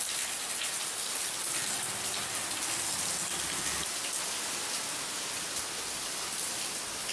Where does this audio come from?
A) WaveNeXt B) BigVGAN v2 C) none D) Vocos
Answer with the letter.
C